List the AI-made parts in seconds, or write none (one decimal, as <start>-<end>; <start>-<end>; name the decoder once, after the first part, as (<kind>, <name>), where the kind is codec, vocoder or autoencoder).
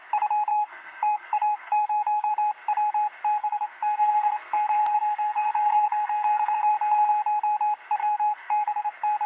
0.5-2.3 (codec, SNAC); 3.4-6.7; 8.0-8.9